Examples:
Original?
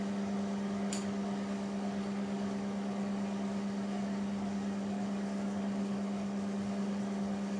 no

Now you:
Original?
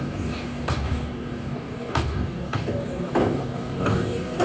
no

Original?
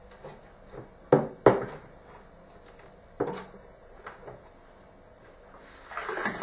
yes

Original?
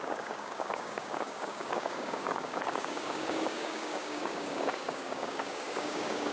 no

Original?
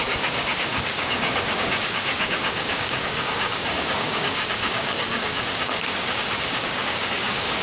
no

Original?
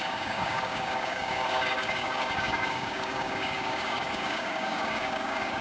no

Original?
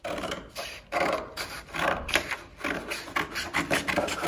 yes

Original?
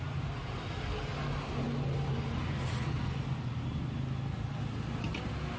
yes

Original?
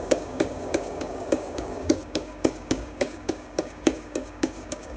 no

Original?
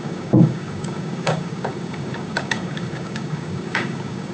no